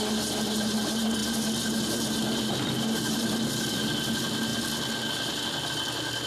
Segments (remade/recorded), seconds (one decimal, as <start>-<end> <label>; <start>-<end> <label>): 0.0-6.3 recorded